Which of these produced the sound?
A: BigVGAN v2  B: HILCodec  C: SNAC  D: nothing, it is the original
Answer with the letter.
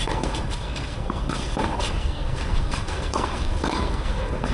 C